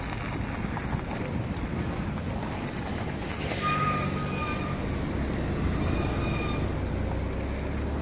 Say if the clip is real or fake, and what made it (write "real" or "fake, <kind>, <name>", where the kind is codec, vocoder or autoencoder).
real